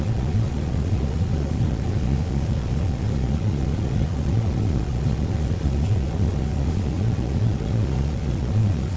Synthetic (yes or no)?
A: yes